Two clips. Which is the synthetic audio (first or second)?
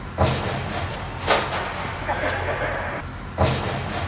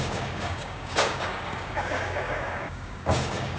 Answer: second